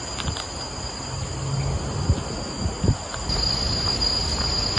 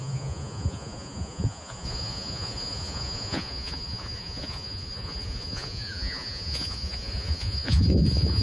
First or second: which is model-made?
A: second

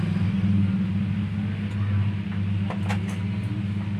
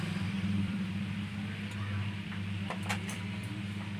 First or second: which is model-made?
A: second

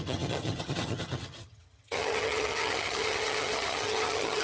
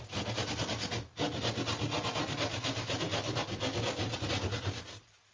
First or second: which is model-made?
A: first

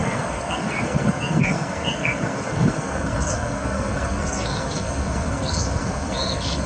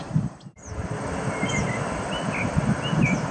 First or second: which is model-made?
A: first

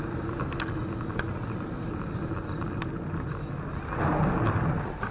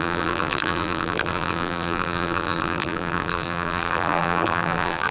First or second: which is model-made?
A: second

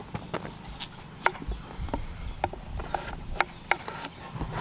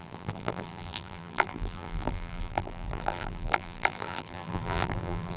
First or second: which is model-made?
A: second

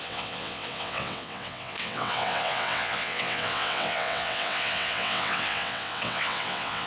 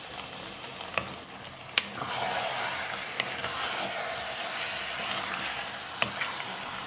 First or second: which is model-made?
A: first